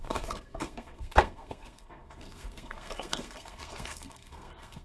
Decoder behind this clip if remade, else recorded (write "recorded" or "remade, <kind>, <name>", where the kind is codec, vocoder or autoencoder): remade, codec, SNAC